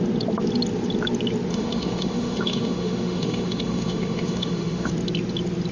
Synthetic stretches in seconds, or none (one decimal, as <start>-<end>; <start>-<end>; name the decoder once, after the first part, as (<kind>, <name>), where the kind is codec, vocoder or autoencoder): 1.5-4.9 (autoencoder, DAC-VAE)